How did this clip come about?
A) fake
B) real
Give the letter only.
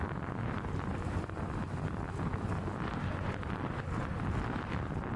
B